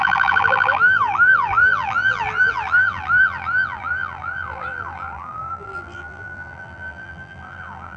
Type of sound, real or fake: fake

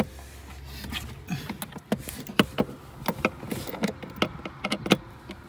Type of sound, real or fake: real